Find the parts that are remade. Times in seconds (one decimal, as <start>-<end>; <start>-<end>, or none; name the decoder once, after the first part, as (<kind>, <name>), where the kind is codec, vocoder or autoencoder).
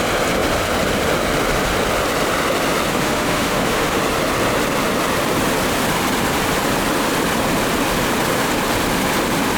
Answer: 2.9-4.0 (autoencoder, DAC-VAE)